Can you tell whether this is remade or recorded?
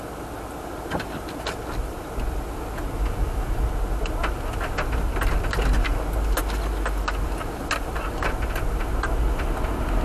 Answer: recorded